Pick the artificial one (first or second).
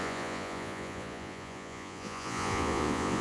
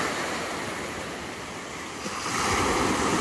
first